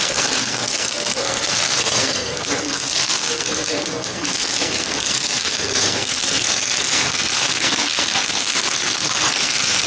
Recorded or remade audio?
remade